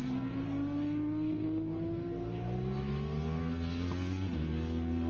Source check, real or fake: real